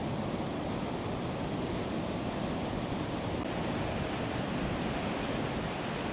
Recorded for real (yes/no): yes